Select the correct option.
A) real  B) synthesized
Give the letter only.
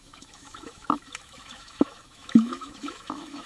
B